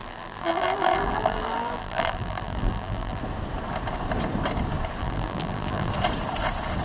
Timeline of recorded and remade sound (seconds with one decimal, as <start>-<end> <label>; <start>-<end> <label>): 0.0-3.2 remade; 3.2-5.0 recorded; 5.0-5.9 remade; 5.9-6.8 recorded